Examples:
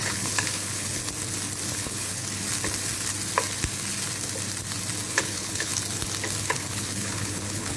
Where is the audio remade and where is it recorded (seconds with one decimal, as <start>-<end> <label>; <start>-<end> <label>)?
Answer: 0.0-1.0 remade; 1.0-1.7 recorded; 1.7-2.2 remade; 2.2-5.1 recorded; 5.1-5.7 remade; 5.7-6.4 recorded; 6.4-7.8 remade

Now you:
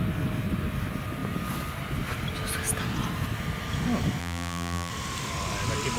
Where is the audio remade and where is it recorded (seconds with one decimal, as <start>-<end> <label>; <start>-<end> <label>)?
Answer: 0.0-4.2 recorded; 4.2-4.9 remade; 4.9-6.0 recorded

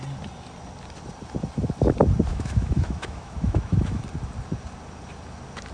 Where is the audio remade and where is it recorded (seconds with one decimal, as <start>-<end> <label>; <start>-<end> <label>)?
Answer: 0.0-2.3 recorded; 2.3-4.0 remade; 4.0-5.7 recorded

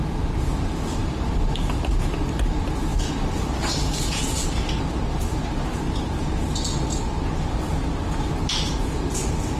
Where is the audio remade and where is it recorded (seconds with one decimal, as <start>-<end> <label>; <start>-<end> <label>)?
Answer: 0.0-1.0 recorded; 1.0-1.9 remade; 1.9-2.9 recorded; 2.9-4.9 remade; 4.9-9.6 recorded

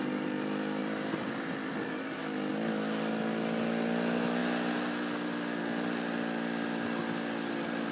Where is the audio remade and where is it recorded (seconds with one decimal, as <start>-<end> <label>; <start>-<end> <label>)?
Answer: 0.0-0.8 recorded; 0.8-2.5 remade; 2.5-7.9 recorded

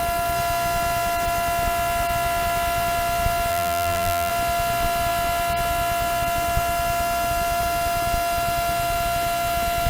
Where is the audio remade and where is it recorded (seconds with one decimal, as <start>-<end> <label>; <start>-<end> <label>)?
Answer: 0.0-3.5 recorded; 3.5-4.3 remade; 4.3-9.9 recorded

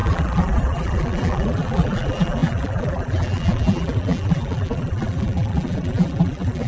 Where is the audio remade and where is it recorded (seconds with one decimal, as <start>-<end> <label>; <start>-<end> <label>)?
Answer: 0.0-6.7 remade

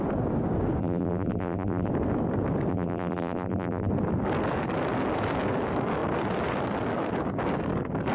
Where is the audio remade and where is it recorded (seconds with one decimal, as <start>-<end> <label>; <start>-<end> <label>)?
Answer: 0.0-0.8 recorded; 0.8-1.9 remade; 1.9-2.7 recorded; 2.7-3.9 remade; 3.9-8.1 recorded